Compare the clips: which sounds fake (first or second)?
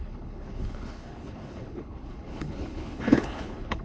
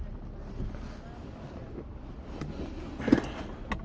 first